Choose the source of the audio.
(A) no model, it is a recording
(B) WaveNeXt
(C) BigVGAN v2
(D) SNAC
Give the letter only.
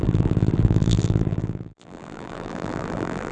C